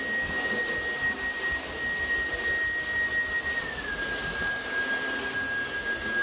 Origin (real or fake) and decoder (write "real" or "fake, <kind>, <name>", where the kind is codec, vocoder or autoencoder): real